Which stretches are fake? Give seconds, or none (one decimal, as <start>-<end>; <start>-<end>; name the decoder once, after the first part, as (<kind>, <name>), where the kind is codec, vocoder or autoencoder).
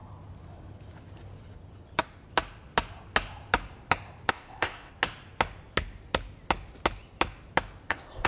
4.3-4.9 (codec, ZipCodec); 7.9-8.3